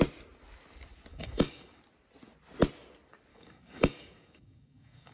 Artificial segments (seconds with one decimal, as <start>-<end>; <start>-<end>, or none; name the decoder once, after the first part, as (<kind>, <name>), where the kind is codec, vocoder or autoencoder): 1.1-1.8 (codec, DAC); 3.3-5.1